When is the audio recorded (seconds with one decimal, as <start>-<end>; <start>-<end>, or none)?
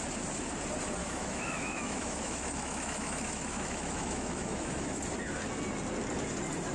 0.0-1.0; 5.0-6.7